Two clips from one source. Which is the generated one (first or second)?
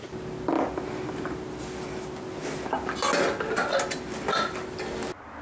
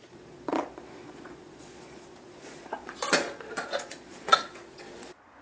second